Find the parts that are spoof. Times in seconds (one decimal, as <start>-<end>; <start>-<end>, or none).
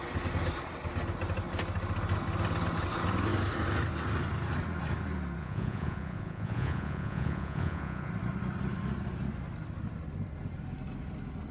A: 5.4-8.1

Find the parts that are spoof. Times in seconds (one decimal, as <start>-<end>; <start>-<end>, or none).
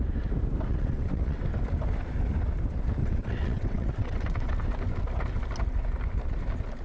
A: 0.7-1.4; 3.0-4.5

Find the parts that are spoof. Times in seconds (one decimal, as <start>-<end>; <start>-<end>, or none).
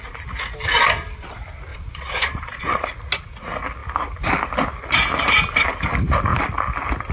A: 1.7-2.9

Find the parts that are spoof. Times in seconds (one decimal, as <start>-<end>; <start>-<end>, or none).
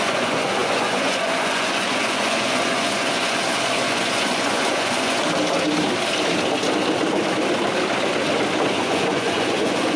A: 0.0-5.2; 8.7-10.0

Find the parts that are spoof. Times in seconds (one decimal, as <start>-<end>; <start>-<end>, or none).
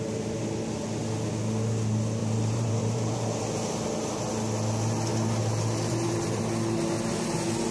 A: 2.2-3.4; 5.1-6.4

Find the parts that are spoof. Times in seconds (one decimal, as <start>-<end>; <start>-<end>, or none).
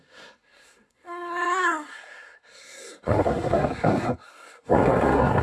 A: 0.0-5.4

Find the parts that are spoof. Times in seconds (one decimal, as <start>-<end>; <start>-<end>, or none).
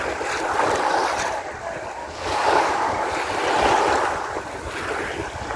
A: 2.0-3.1